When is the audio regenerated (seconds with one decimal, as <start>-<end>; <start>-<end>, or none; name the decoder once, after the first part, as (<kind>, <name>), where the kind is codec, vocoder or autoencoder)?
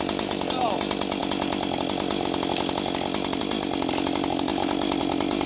none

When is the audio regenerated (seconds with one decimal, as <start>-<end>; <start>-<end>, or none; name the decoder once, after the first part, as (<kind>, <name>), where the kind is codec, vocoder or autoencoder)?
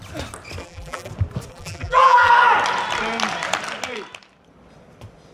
0.6-1.1 (vocoder, BigVGAN v2); 1.5-2.3